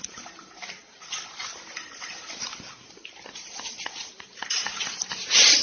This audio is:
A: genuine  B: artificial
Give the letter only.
A